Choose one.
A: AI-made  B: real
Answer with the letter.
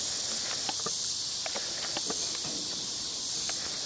B